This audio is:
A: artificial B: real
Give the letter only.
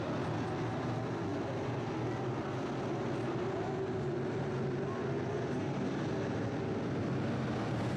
B